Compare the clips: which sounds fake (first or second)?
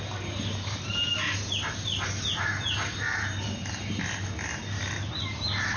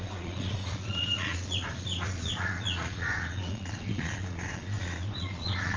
second